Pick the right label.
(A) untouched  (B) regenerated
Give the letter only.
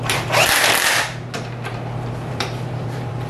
B